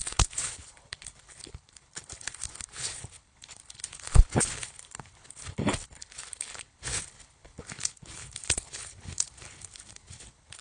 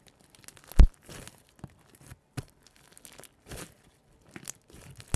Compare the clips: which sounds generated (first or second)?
first